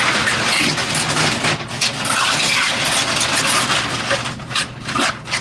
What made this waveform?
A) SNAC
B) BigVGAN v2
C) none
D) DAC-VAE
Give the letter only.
C